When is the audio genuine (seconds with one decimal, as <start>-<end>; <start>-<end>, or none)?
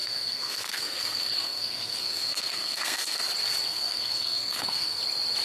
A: 3.2-3.7; 5.0-5.4